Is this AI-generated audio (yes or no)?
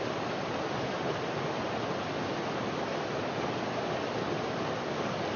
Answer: no